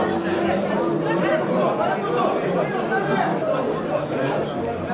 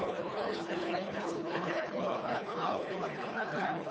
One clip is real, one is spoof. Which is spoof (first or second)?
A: second